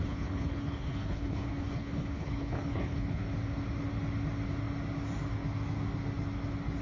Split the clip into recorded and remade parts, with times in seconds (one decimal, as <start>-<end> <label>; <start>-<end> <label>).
0.0-3.2 remade; 3.2-6.8 recorded